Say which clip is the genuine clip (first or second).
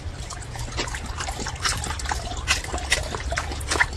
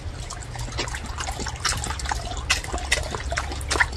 second